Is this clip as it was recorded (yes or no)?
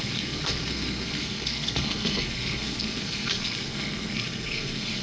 no